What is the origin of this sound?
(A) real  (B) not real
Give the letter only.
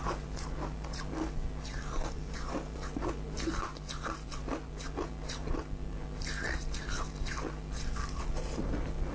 A